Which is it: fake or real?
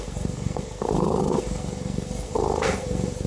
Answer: fake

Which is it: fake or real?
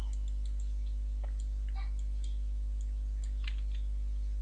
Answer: real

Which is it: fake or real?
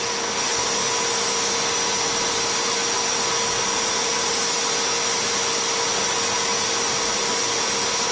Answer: real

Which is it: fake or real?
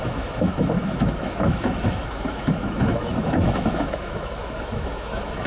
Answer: fake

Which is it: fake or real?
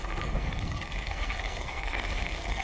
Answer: fake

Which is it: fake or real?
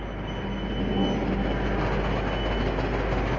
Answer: real